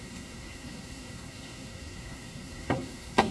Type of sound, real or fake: fake